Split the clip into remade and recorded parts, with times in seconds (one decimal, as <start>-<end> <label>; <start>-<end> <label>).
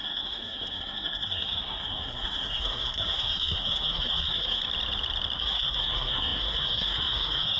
0.0-4.6 remade; 4.6-5.4 recorded; 5.4-7.6 remade